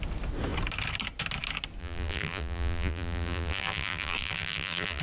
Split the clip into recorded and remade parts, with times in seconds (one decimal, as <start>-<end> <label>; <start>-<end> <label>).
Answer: 0.0-1.8 recorded; 1.8-5.0 remade